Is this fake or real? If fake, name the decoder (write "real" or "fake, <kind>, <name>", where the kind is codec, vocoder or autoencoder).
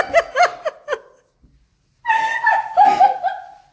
real